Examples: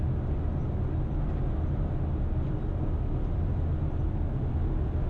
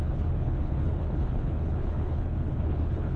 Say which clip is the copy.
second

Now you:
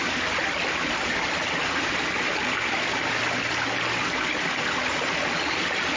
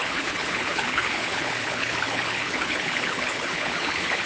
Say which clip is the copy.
second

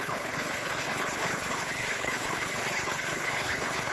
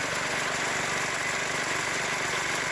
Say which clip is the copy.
first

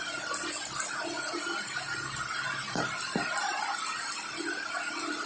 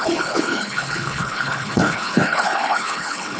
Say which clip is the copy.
second